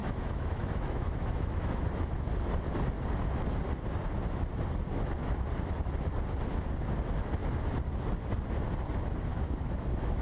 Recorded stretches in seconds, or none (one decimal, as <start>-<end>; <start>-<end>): 2.3-9.3